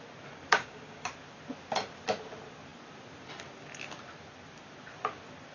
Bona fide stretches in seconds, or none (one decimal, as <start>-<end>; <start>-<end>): 0.0-0.5; 1.1-5.5